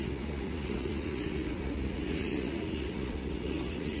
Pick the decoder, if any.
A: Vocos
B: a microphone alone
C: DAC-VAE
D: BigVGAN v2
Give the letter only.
A